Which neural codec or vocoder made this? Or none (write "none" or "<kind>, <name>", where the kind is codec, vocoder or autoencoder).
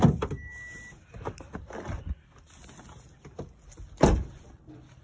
none